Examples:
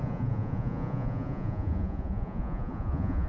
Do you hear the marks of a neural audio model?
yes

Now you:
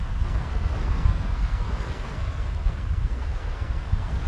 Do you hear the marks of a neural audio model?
yes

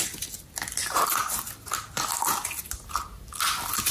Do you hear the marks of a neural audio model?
no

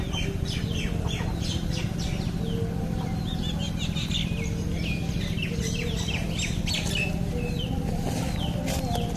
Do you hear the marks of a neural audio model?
no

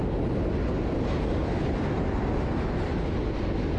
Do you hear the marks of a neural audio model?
no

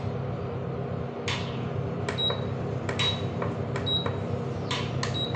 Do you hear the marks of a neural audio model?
no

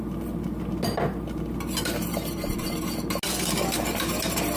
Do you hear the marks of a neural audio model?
no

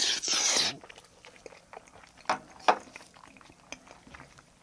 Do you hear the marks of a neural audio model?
no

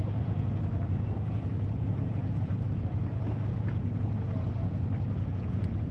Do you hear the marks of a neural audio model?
yes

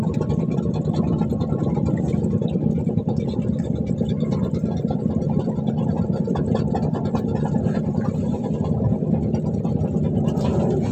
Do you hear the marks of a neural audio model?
no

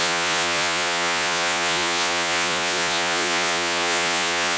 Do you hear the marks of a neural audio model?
yes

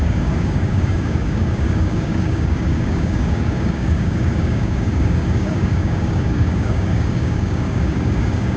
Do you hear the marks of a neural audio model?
yes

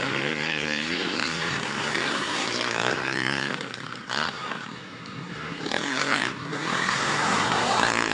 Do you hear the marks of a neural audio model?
yes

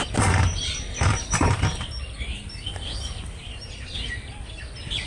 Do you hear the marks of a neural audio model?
no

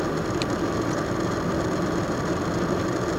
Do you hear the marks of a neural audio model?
no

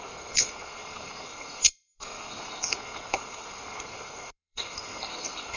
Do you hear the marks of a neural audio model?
yes